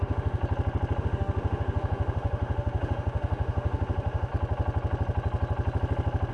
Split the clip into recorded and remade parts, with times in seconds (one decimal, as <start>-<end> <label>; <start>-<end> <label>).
0.0-0.4 remade; 0.4-1.0 recorded; 1.0-4.3 remade; 4.3-6.3 recorded

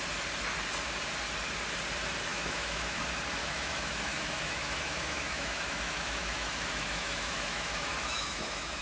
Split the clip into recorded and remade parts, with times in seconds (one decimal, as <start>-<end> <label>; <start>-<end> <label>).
0.0-2.3 recorded; 2.3-3.0 remade; 3.0-3.4 recorded; 3.4-8.8 remade